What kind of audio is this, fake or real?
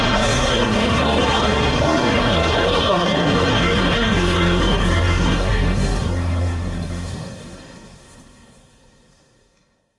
fake